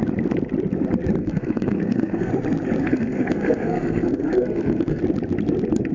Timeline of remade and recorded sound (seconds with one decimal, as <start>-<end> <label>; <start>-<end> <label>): 0.0-1.2 recorded; 1.2-2.3 remade; 2.3-2.8 recorded; 2.8-5.0 remade; 5.0-5.9 recorded